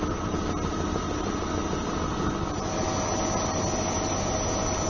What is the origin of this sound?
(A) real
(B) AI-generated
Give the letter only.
A